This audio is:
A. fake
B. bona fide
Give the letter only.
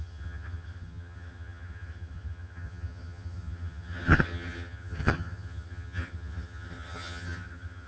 A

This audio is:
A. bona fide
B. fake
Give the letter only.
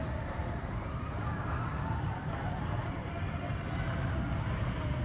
A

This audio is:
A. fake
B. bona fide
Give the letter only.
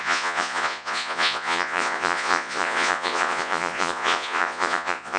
A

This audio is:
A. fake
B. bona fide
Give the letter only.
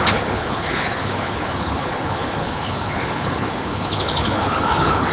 A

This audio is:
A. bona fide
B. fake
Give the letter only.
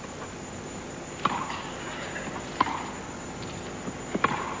A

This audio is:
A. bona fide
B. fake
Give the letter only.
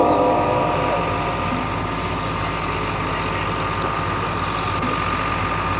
A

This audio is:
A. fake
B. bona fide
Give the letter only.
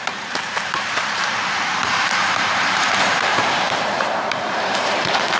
A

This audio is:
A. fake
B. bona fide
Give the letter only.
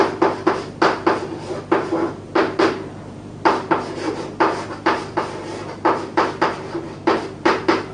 B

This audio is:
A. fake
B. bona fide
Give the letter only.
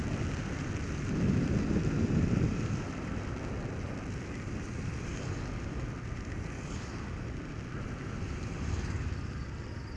B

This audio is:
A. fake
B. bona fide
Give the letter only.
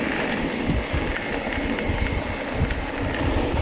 B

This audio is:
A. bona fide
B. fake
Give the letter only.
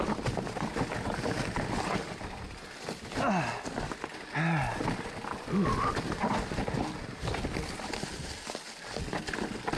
A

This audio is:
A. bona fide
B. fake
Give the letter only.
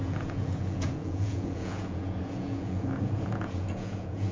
B